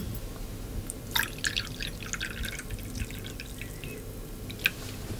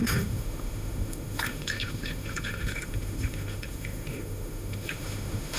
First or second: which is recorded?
first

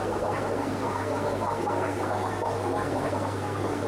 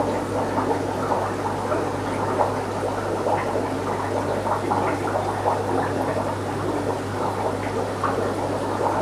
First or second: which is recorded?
second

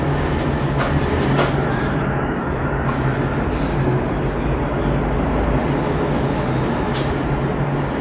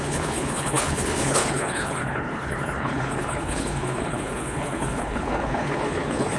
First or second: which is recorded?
first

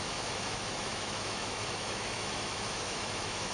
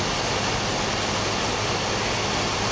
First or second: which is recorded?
second